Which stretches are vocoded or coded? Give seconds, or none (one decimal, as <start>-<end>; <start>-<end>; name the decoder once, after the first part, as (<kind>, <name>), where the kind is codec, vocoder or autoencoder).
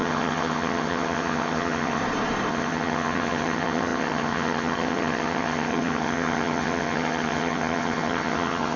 0.0-2.0 (vocoder, HiFi-GAN); 2.5-8.8